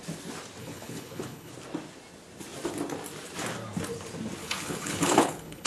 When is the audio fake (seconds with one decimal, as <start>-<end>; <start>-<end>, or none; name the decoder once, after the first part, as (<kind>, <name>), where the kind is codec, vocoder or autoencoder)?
0.6-1.5 (codec, HILCodec); 4.4-5.7